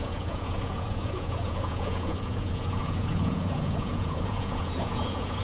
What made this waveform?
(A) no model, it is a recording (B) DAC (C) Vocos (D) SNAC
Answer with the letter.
C